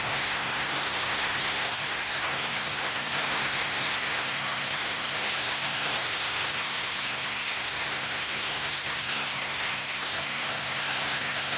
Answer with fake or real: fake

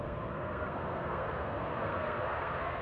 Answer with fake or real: fake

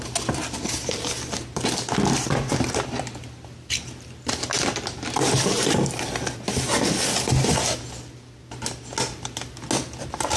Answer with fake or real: real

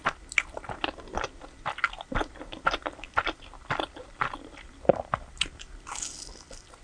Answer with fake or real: real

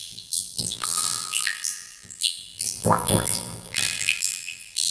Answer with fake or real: fake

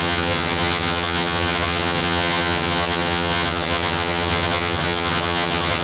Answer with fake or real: fake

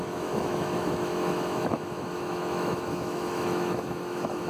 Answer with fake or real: fake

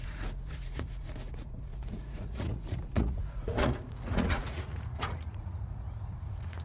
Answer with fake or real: fake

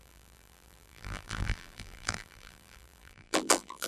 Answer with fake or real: fake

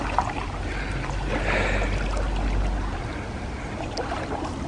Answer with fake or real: real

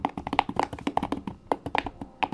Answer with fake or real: real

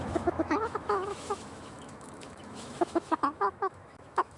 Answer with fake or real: fake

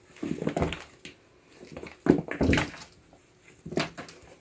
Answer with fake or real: real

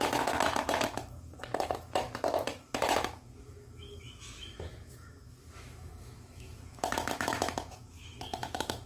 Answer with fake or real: fake